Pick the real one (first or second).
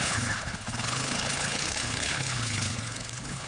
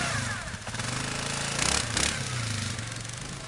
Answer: second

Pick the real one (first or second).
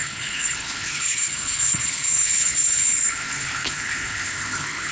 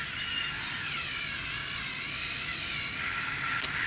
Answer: second